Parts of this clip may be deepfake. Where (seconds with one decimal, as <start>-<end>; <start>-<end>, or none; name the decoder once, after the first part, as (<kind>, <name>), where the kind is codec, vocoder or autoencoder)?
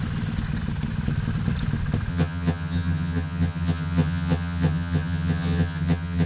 2.1-6.3 (vocoder, HiFi-GAN)